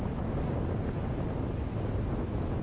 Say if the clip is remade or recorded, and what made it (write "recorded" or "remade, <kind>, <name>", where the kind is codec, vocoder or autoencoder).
recorded